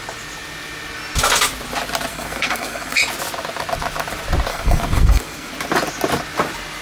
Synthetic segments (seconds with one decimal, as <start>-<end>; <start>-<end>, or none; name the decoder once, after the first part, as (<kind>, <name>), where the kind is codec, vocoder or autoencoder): 2.1-3.0 (codec, SNAC); 4.5-5.5